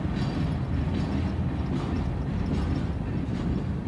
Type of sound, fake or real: real